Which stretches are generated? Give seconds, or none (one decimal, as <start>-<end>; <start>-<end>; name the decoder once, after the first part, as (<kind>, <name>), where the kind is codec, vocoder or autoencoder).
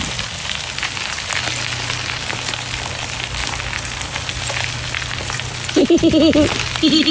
none